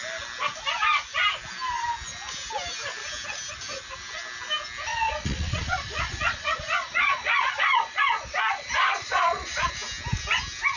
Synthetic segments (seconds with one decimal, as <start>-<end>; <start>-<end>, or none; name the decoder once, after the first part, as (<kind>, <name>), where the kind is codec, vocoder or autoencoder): 4.9-9.7 (vocoder, Vocos)